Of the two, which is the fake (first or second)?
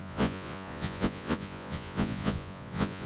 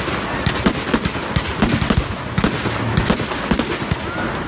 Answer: first